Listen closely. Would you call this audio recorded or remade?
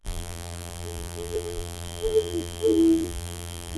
remade